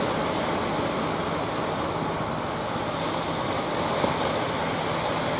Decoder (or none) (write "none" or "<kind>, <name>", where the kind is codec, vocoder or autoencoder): none